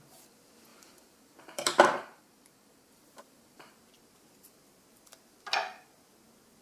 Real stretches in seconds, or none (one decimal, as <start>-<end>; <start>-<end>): 0.0-0.7; 3.8-6.6